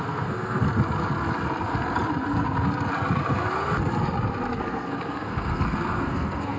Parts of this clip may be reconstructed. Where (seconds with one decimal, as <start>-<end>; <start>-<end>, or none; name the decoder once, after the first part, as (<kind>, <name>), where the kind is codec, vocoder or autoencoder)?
0.0-0.6 (codec, SNAC); 4.6-6.6